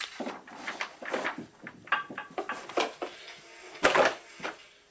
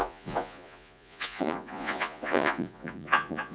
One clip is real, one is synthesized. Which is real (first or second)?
first